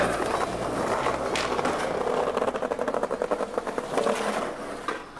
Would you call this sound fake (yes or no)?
no